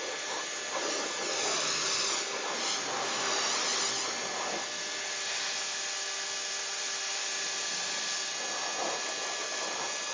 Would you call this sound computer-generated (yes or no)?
no